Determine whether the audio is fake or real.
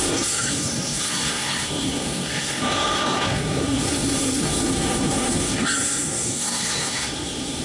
fake